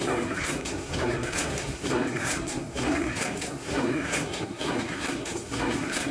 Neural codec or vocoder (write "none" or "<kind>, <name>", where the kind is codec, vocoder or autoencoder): codec, SNAC